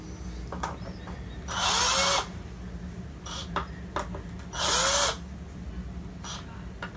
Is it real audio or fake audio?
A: real